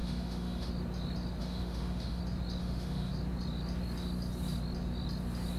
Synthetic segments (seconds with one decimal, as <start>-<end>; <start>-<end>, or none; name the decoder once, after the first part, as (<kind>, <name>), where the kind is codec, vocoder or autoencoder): 0.0-0.7 (autoencoder, DAC-VAE); 1.4-2.2; 2.6-3.1